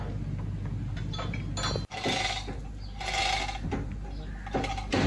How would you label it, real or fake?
real